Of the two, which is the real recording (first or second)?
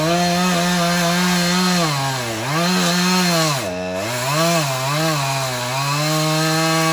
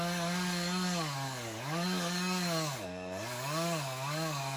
first